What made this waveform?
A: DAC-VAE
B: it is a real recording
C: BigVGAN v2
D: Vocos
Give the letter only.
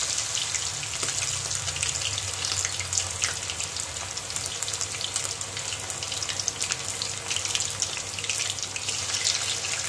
B